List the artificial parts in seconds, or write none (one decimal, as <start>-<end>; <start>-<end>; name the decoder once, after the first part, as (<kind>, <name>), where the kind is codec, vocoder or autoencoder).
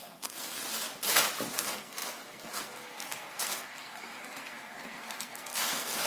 0.0-0.6 (codec, SNAC); 1.5-6.1